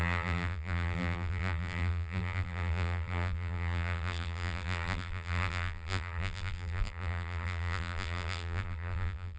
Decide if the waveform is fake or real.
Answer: fake